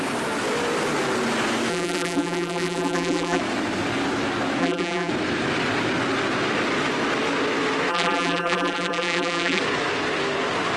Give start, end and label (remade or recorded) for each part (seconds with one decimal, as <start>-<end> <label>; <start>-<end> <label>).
0.0-1.7 recorded; 1.7-3.4 remade; 3.4-4.6 recorded; 4.6-5.1 remade; 5.1-7.9 recorded; 7.9-9.6 remade; 9.6-10.8 recorded